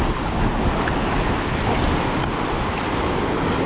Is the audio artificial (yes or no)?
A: no